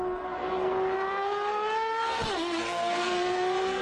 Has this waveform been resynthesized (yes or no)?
yes